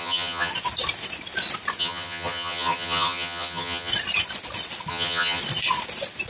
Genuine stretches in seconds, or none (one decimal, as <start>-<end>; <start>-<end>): 0.5-1.8; 3.9-4.9; 5.4-6.3